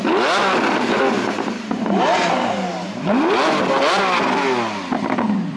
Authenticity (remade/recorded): recorded